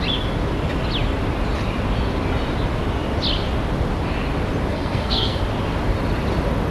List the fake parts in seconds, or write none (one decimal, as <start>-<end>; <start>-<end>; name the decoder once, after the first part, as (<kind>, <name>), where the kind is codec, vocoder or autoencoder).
4.7-5.4 (codec, SNAC)